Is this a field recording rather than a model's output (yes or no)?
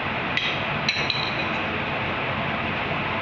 yes